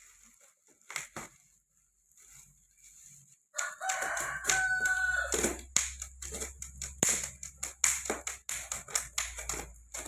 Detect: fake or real real